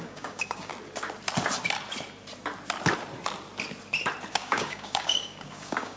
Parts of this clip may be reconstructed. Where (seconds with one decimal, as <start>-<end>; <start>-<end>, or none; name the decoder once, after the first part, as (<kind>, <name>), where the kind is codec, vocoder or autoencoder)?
0.0-0.7 (codec, DAC); 4.3-6.0